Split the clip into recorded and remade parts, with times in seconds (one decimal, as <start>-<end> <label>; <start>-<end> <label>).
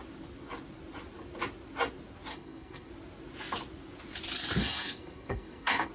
0.0-2.3 recorded; 2.3-2.9 remade; 2.9-4.6 recorded; 4.6-5.9 remade